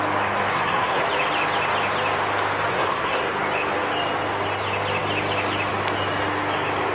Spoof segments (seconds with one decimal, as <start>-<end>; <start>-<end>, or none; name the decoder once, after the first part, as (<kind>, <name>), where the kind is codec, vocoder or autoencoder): 0.5-1.0 (codec, SNAC); 2.7-3.3